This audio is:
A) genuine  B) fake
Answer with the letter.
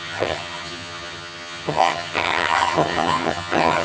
B